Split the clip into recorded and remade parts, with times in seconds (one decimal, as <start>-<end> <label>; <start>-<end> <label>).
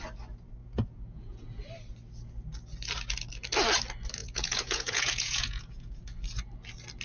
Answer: 0.0-0.6 recorded; 0.6-1.6 remade; 1.6-4.2 recorded; 4.2-6.0 remade; 6.0-7.0 recorded